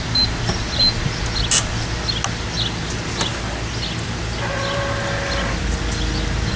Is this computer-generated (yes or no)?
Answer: no